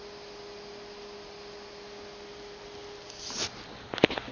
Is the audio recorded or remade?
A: recorded